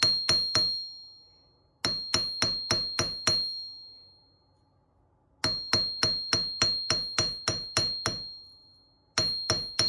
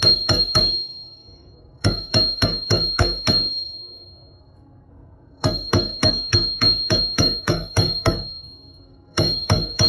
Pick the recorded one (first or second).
first